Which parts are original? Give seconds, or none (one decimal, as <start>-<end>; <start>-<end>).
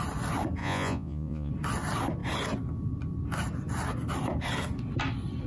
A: 0.0-0.6; 1.5-5.5